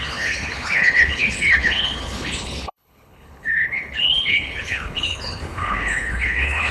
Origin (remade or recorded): remade